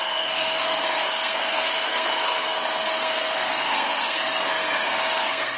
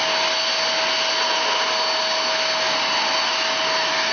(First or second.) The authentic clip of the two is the second